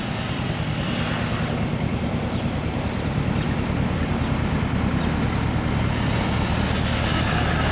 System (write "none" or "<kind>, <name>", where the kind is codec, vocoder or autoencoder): none